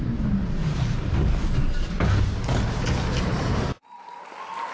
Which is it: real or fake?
real